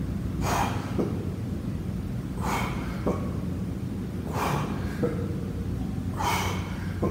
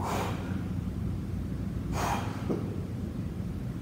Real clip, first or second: first